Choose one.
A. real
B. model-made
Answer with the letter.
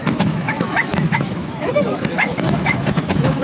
B